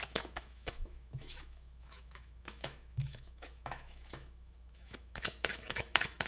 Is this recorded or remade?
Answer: remade